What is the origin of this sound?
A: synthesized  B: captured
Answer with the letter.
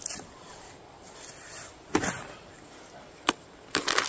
B